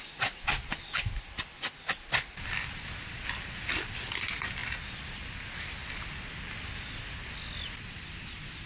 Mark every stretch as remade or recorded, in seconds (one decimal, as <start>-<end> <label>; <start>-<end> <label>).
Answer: 0.0-8.7 recorded